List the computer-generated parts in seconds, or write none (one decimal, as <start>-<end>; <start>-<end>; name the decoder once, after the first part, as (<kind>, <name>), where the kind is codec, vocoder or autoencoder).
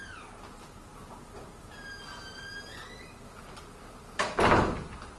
none